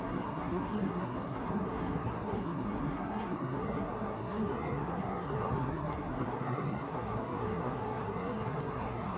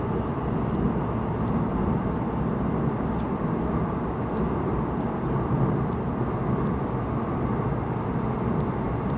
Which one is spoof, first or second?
first